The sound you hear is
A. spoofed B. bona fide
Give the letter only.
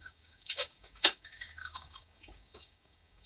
A